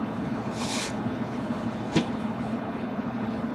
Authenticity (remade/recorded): remade